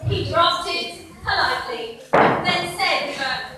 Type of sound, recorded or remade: recorded